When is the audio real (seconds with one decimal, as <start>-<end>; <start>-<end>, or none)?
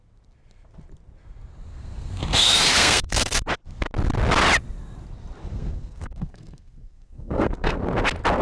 0.0-1.7; 3.4-5.5; 7.8-8.4